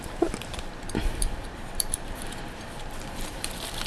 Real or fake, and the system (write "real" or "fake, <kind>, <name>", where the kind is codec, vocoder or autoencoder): fake, vocoder, BigVGAN v2